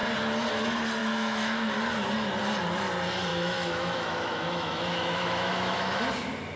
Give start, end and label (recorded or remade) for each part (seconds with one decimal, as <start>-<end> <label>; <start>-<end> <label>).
0.0-1.0 recorded; 1.0-1.7 remade; 1.7-3.3 recorded; 3.3-6.0 remade; 6.0-6.6 recorded